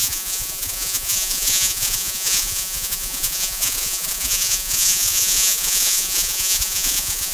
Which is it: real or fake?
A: fake